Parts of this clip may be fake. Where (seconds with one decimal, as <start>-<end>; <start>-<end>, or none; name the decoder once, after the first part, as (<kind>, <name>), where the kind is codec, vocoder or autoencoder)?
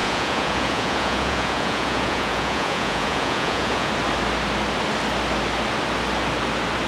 0.0-3.9 (vocoder, Vocos)